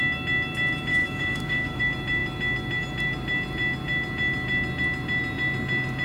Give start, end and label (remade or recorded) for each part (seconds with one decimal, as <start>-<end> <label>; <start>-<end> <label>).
0.0-0.9 recorded; 0.9-1.8 remade; 1.8-6.0 recorded